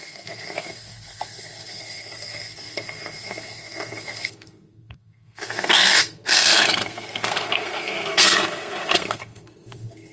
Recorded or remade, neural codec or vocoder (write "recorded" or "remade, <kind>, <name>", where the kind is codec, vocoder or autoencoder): remade, codec, SNAC